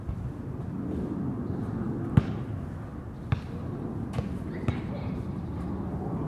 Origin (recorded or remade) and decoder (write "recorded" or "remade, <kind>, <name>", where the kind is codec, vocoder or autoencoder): recorded